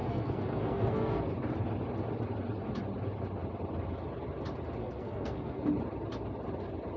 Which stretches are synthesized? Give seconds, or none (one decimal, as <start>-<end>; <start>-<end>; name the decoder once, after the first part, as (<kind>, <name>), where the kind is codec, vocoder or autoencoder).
0.0-1.2 (codec, SNAC); 4.8-5.6